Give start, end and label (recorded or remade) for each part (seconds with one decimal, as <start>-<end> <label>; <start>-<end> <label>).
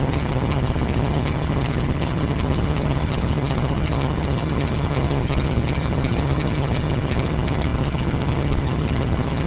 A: 0.0-9.5 remade